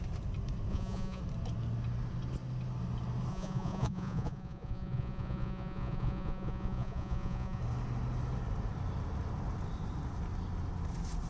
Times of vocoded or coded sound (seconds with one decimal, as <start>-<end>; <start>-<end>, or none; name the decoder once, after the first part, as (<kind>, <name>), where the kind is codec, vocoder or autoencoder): 0.7-1.2 (vocoder, Vocos); 3.3-7.6